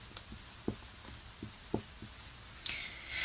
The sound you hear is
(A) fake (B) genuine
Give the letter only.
B